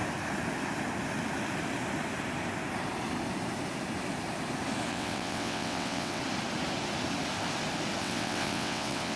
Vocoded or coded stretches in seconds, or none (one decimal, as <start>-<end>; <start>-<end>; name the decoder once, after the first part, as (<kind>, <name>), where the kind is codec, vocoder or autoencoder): 4.9-6.2 (vocoder, WaveNeXt); 8.0-9.2